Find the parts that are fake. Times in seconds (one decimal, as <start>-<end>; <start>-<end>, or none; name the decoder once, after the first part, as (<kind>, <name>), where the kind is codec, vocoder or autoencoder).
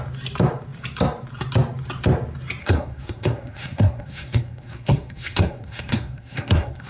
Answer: 2.6-6.9 (codec, SNAC)